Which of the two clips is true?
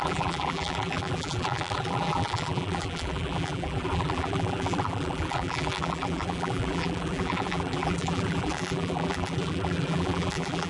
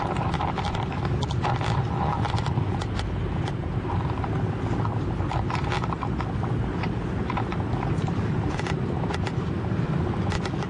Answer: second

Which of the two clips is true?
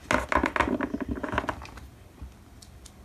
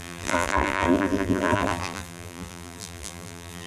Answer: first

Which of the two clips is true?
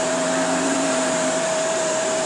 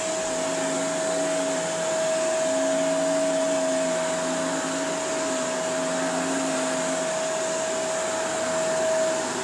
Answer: second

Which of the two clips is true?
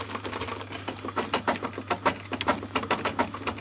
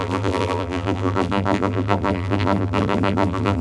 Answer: first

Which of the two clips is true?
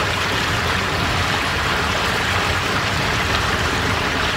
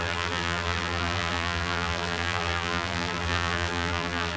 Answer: first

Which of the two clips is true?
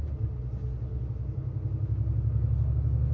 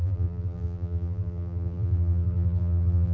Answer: first